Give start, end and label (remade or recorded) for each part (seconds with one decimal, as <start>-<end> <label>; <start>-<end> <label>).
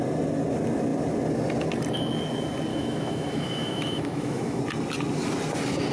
0.0-2.7 recorded; 2.7-4.6 remade; 4.6-5.9 recorded